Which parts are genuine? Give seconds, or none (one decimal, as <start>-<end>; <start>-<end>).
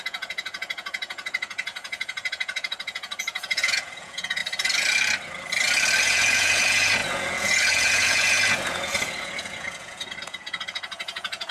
4.4-6.0